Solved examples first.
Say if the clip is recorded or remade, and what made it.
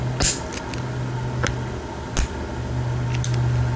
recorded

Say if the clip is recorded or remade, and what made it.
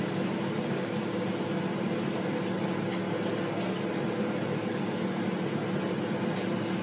recorded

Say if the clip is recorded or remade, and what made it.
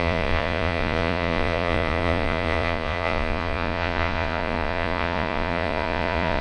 remade, vocoder, Vocos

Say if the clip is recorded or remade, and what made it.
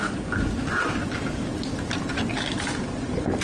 recorded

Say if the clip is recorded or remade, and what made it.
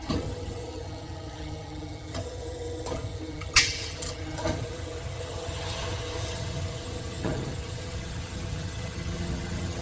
remade, vocoder, HiFi-GAN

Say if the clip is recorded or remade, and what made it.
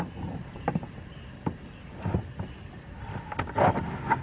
recorded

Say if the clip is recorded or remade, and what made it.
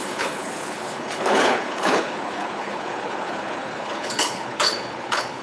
remade, codec, HILCodec